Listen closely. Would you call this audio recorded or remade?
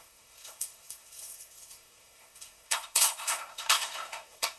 remade